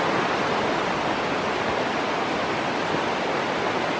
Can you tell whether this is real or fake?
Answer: real